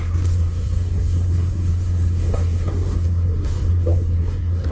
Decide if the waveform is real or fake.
fake